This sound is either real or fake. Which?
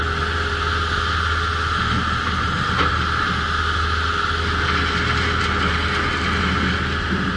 real